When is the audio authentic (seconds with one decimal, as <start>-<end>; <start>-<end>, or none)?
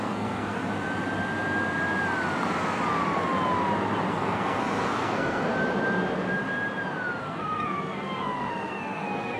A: 0.7-4.1; 5.5-7.2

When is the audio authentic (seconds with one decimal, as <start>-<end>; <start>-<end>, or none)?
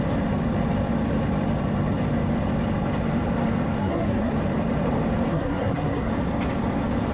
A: 0.0-3.8; 4.3-5.3; 6.1-7.1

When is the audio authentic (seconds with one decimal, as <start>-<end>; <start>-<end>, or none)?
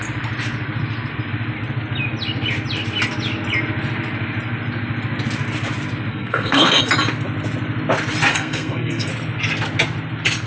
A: 0.0-6.1; 6.8-8.3; 9.1-10.5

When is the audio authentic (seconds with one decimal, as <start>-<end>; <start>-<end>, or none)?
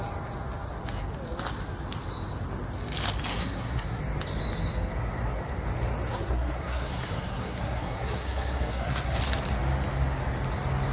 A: 0.0-3.3; 4.0-6.1; 9.2-10.9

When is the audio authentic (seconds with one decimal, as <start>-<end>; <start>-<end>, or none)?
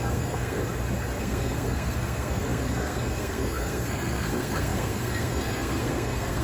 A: 0.6-1.2